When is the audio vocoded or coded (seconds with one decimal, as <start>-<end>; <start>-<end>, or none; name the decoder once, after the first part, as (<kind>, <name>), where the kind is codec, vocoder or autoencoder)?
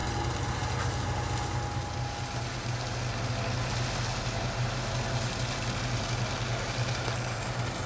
none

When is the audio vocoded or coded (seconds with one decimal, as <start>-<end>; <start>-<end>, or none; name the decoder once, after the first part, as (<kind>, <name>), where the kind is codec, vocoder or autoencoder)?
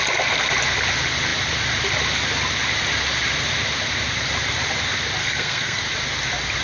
5.2-5.8 (codec, SNAC)